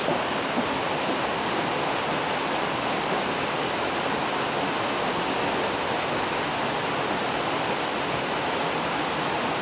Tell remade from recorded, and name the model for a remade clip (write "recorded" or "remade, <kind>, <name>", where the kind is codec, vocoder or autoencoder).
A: recorded